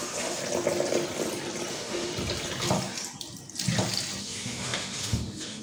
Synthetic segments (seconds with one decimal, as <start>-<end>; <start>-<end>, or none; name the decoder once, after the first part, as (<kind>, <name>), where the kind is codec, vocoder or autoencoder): 0.0-0.4 (autoencoder, DAC-VAE); 1.7-2.1; 4.2-5.6